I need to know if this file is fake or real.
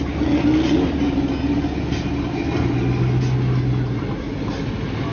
real